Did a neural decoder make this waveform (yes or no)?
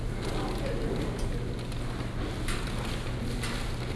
no